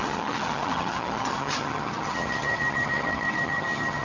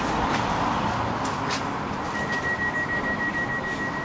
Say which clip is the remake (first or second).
first